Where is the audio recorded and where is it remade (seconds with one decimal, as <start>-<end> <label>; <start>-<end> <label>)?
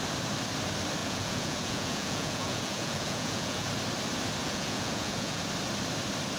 0.0-1.0 recorded; 1.0-3.7 remade; 3.7-4.4 recorded; 4.4-5.4 remade; 5.4-6.4 recorded